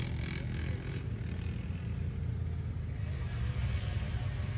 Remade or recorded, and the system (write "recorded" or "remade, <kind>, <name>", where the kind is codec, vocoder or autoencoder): recorded